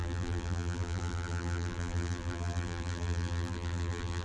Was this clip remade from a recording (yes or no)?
yes